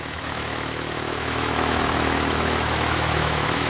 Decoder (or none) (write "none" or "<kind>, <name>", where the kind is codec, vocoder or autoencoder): autoencoder, DAC-VAE